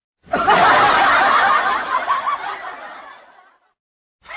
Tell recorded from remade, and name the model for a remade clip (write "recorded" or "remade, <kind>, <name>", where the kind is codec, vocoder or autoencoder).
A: recorded